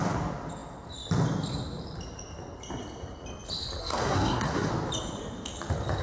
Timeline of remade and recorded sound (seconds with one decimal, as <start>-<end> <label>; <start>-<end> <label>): 0.0-3.8 recorded; 3.8-4.7 remade; 4.7-6.0 recorded